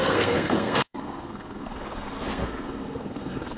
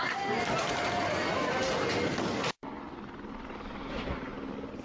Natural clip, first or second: second